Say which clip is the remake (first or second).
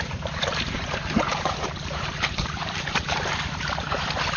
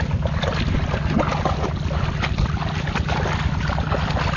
first